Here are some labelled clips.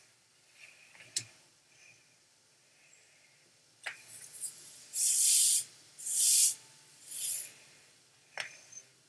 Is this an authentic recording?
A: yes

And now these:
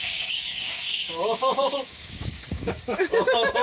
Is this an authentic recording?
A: no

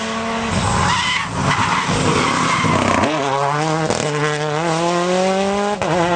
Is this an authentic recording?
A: yes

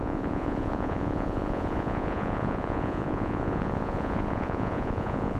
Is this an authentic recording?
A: no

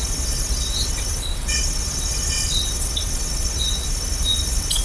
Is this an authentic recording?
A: no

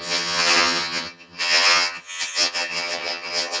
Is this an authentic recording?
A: no